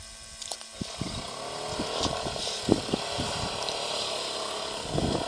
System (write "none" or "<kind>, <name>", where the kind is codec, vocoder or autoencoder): none